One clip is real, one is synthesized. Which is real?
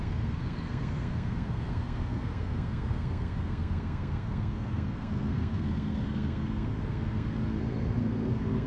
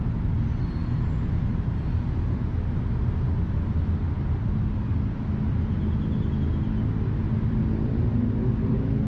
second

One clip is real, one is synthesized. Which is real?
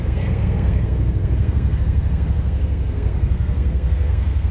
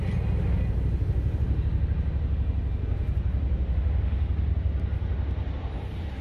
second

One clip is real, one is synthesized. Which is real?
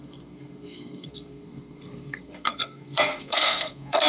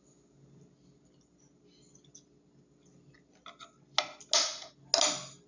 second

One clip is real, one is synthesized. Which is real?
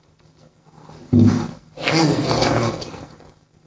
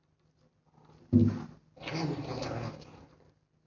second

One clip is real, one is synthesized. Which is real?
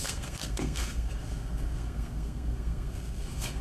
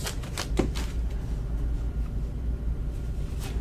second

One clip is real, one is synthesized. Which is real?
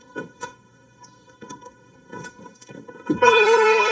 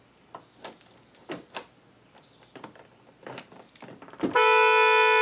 second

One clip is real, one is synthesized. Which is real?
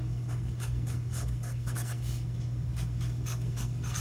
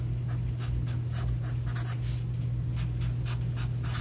second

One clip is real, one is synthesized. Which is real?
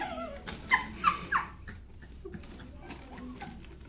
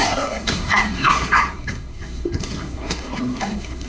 first